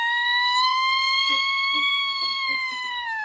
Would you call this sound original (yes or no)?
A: no